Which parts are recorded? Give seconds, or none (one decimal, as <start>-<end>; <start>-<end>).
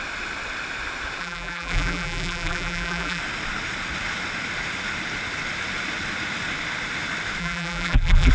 0.0-1.2; 3.2-7.4